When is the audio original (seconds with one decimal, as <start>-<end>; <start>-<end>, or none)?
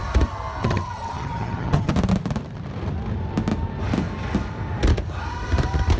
0.0-0.6; 1.9-6.0